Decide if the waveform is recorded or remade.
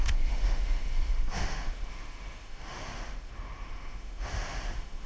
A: remade